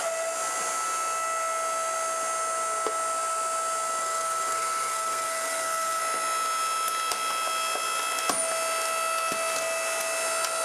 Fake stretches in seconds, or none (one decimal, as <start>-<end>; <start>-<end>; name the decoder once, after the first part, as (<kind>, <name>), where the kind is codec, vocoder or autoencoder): 4.0-6.0 (codec, SNAC)

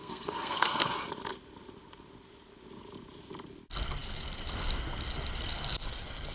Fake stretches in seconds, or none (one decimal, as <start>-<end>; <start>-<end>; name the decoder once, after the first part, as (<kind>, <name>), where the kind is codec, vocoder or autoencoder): 0.0-0.9 (codec, SNAC)

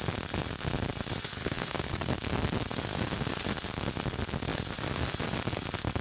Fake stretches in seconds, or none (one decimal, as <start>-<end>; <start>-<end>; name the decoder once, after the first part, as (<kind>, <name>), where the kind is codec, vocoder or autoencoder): 1.4-2.1 (codec, SNAC)

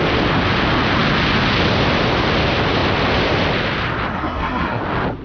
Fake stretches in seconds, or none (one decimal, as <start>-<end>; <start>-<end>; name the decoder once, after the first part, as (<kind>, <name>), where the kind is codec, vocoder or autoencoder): 4.1-4.8 (codec, SNAC)

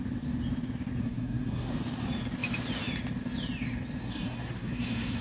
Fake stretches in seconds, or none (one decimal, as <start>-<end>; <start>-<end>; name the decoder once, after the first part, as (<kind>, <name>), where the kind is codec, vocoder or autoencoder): 1.0-1.7 (codec, SNAC); 4.0-5.2

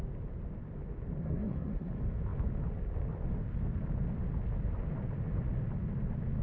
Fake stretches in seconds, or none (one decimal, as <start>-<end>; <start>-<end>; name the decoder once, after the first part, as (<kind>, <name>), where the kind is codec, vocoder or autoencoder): 1.2-1.9 (codec, SNAC)

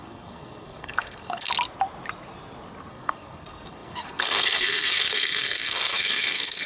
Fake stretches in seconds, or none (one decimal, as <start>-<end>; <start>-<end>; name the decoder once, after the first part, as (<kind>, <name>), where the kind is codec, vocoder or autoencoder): 0.0-1.5 (codec, SNAC); 2.9-6.7

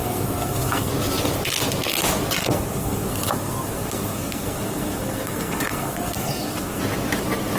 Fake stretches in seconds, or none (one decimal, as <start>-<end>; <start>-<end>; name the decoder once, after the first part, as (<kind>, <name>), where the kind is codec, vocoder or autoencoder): 0.0-0.9 (codec, SNAC); 2.4-6.8